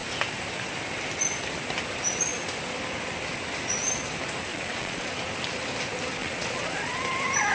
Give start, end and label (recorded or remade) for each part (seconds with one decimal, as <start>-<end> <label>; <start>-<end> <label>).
0.0-4.5 recorded; 4.5-5.1 remade; 5.1-6.2 recorded; 6.2-7.0 remade; 7.0-7.5 recorded